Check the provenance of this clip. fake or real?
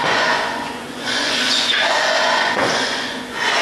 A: fake